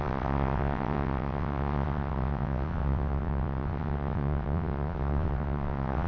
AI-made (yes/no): yes